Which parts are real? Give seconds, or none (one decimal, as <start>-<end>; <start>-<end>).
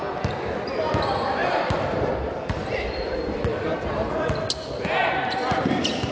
0.0-1.4; 2.1-3.5; 4.2-5.0